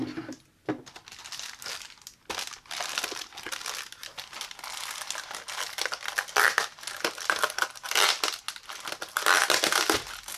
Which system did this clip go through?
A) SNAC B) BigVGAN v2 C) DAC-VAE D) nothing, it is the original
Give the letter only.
D